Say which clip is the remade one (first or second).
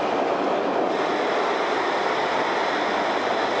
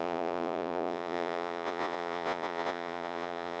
second